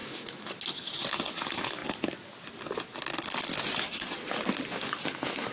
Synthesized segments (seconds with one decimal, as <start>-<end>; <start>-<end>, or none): 0.0-0.5